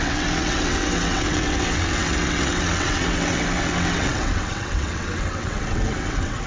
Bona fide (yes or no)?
no